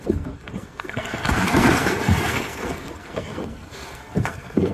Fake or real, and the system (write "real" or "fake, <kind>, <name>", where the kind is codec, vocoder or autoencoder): fake, codec, SNAC